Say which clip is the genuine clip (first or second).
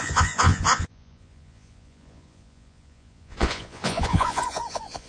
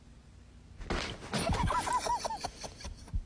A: second